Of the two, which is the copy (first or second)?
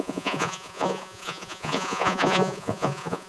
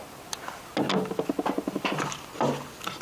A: first